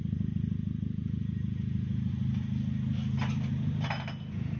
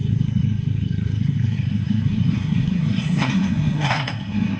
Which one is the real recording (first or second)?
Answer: first